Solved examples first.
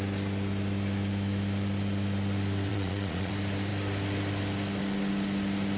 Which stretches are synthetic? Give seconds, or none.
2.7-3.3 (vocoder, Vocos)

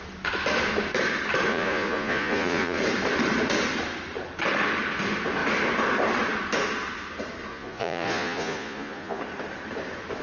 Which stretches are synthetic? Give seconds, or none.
1.5-2.8 (vocoder, Vocos); 7.5-9.2